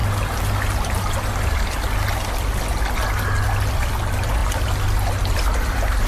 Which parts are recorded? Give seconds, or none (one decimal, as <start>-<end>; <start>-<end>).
0.0-3.7; 4.4-5.2